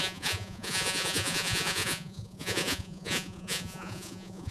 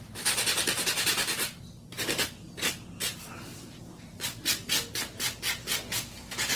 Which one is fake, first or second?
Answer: first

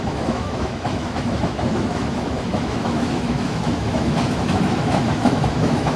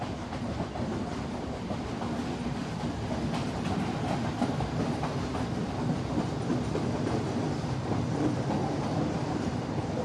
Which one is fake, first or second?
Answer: first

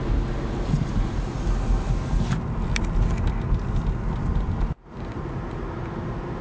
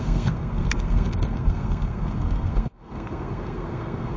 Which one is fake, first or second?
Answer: second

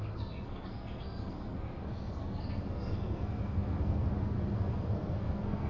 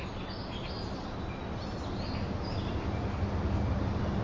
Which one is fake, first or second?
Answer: first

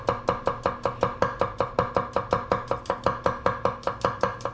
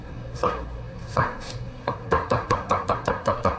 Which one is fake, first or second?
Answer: second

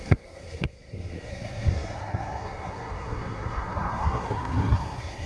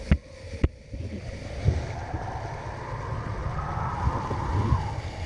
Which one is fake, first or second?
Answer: first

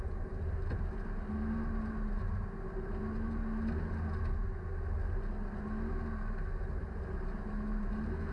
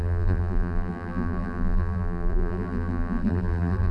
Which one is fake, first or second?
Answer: second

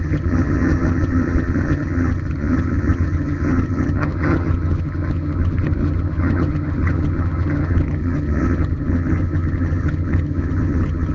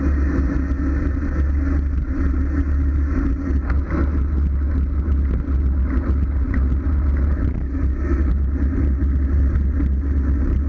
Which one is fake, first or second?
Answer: first